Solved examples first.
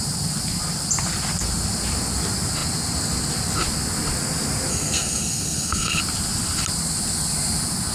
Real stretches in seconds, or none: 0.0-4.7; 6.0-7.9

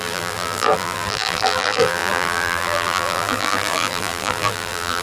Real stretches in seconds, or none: none

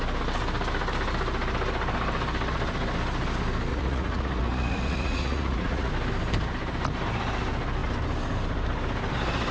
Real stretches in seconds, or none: 0.0-3.7; 5.9-9.5